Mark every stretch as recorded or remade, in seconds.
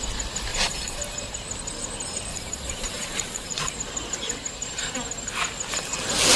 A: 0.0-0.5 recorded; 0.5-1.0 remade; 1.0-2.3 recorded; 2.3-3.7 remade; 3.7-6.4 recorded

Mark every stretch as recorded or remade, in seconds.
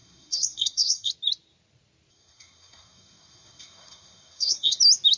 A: 0.0-1.1 remade; 1.1-2.1 recorded; 2.1-4.8 remade; 4.8-5.2 recorded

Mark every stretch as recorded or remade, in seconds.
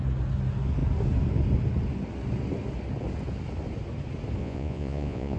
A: 0.0-4.4 recorded; 4.4-5.4 remade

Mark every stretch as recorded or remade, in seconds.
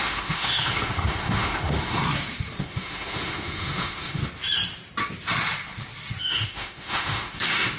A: 0.0-2.0 remade; 2.0-2.6 recorded; 2.6-4.2 remade; 4.2-6.2 recorded; 6.2-7.8 remade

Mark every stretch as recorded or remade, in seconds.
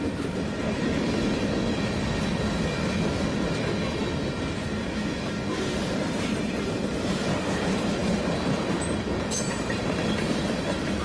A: 0.0-0.9 remade; 0.9-5.6 recorded; 5.6-11.0 remade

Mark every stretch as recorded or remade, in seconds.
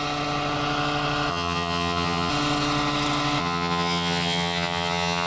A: 0.0-1.3 recorded; 1.3-2.3 remade; 2.3-3.4 recorded; 3.4-5.3 remade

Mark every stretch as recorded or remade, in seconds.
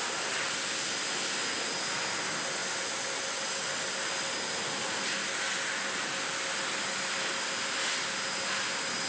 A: 0.0-9.1 recorded